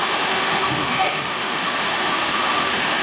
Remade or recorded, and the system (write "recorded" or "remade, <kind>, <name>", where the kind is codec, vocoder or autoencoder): remade, autoencoder, DAC-VAE